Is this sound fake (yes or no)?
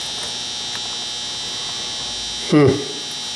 no